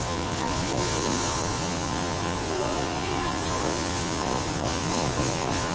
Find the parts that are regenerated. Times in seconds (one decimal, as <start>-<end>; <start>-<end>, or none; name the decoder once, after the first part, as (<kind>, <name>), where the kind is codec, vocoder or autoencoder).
0.0-5.7 (vocoder, Vocos)

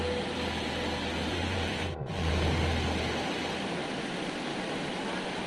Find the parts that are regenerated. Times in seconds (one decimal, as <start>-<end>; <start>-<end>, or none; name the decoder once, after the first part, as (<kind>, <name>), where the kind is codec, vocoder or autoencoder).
1.3-2.3 (vocoder, Vocos)